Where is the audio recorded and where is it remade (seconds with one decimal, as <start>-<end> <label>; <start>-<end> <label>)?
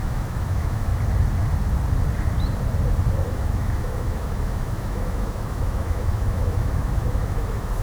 0.0-0.9 remade; 0.9-3.3 recorded; 3.3-7.8 remade